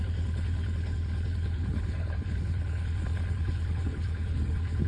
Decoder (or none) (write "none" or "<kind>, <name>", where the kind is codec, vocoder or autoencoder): codec, HILCodec